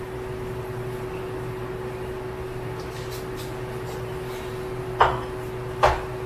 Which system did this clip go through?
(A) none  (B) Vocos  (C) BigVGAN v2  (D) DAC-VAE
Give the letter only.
A